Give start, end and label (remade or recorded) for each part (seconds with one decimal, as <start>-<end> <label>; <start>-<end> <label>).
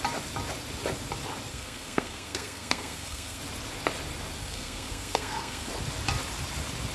0.0-1.5 recorded; 1.5-3.4 remade; 3.4-4.4 recorded; 4.4-5.7 remade; 5.7-6.9 recorded